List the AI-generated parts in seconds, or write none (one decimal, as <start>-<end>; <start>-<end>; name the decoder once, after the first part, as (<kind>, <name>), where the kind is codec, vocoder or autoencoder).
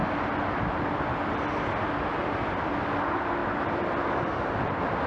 none